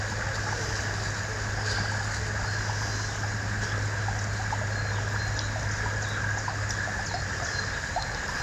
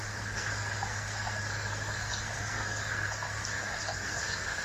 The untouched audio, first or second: first